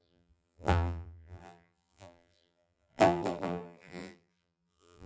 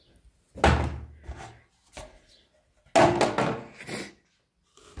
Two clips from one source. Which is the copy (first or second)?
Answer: first